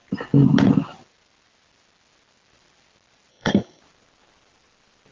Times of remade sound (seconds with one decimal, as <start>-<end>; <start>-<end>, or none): 3.3-3.8